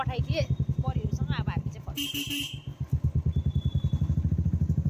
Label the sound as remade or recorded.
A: recorded